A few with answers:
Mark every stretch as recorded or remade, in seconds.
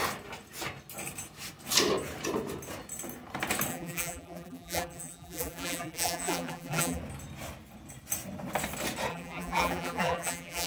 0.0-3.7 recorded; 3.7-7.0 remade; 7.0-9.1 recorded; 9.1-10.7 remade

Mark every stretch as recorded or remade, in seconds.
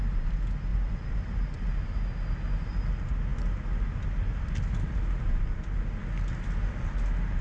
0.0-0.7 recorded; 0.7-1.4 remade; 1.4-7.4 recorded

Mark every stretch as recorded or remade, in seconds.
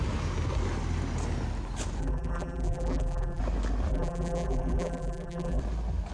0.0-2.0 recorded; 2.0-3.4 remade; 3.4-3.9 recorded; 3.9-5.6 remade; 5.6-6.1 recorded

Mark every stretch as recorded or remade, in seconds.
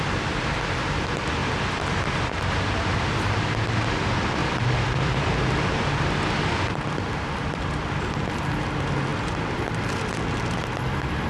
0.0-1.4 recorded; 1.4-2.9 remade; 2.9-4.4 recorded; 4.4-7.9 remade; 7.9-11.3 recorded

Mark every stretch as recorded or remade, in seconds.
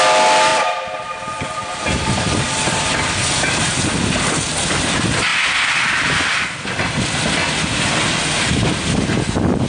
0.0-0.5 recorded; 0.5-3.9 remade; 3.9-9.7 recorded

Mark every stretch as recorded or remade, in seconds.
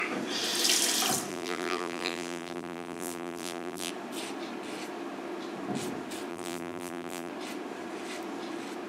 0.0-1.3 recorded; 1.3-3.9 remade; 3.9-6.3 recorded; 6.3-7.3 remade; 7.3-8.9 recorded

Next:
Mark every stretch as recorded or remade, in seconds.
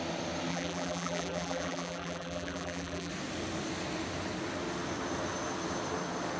0.0-0.5 recorded; 0.5-3.1 remade; 3.1-6.4 recorded